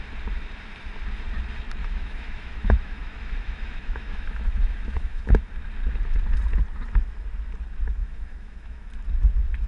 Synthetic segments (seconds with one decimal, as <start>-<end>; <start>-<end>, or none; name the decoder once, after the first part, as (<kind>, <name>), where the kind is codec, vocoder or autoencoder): 1.8-5.5 (autoencoder, DAC-VAE); 8.0-8.9